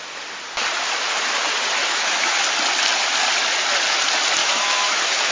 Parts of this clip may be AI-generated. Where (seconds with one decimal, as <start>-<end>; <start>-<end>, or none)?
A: 1.8-2.4; 4.4-5.3